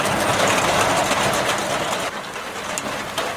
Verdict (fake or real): real